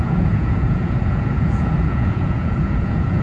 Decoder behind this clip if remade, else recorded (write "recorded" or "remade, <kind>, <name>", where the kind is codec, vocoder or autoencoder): remade, vocoder, Vocos